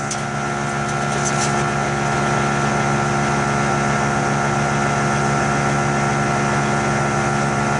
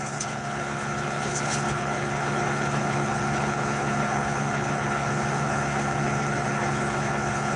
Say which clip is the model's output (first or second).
second